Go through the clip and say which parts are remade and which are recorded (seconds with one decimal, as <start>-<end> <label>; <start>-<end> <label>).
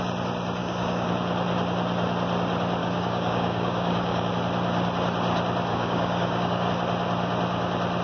0.0-0.6 recorded; 0.6-1.1 remade; 1.1-2.8 recorded; 2.8-4.3 remade; 4.3-5.7 recorded; 5.7-6.7 remade; 6.7-8.0 recorded